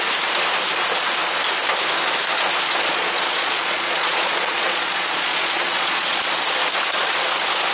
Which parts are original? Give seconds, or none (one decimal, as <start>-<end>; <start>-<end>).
0.0-2.9; 6.2-7.7